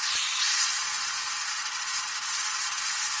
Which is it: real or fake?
real